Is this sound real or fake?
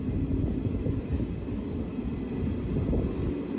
real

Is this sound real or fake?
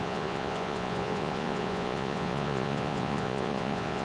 fake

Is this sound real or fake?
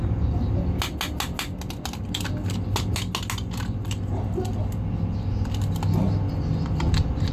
real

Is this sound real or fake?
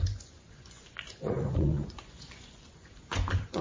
fake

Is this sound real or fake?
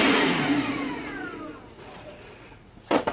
fake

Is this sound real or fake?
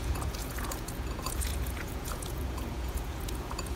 fake